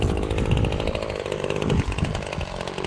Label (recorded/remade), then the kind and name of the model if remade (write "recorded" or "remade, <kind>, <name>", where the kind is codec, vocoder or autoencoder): recorded